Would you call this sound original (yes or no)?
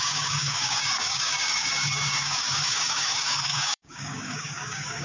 no